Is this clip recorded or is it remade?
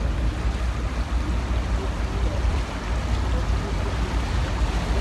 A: recorded